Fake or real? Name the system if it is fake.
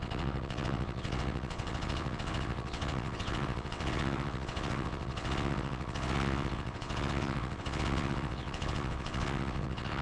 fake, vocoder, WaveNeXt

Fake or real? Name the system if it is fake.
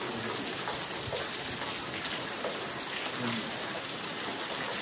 real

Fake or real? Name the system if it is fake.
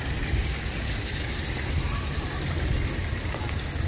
real